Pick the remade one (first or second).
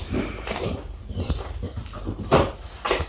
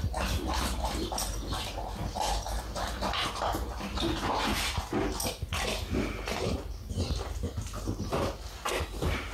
first